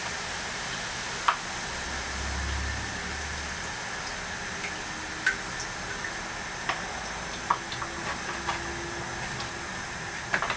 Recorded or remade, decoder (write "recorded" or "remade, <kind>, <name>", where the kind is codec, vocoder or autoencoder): recorded